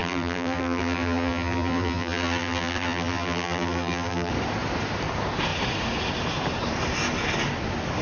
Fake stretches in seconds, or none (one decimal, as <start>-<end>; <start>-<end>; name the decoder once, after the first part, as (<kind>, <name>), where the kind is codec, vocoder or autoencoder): 0.0-4.3 (vocoder, BigVGAN v2)